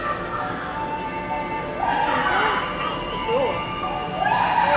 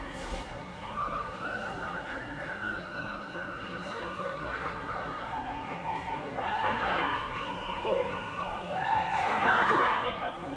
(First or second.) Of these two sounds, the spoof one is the second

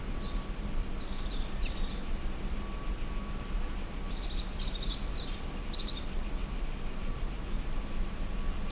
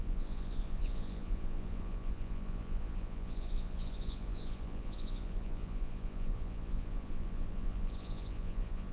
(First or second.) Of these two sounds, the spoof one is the second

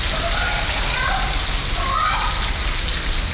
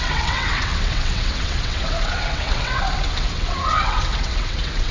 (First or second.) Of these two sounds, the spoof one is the second